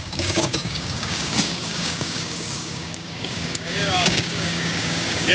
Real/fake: fake